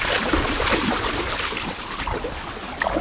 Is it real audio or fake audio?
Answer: real